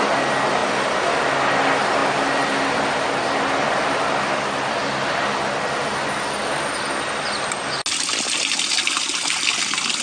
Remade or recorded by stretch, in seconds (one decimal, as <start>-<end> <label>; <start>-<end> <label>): 0.0-10.0 recorded